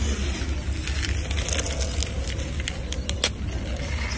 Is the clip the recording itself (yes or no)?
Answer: yes